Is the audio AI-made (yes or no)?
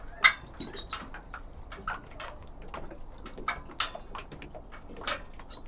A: no